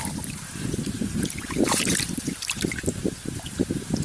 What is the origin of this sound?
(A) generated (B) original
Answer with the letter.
A